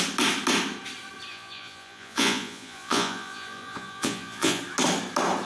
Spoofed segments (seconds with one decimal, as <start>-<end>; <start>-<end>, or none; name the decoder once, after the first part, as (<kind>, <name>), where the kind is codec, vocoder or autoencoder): 1.3-4.6 (vocoder, Vocos)